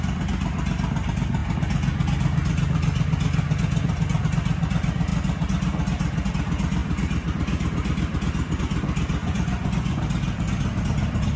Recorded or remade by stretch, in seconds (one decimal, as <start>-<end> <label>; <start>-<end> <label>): 0.0-9.2 recorded; 9.2-10.0 remade; 10.0-11.4 recorded